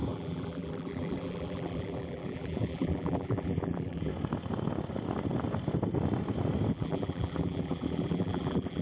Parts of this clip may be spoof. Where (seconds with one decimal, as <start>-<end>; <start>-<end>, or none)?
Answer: 0.0-4.1; 6.7-8.8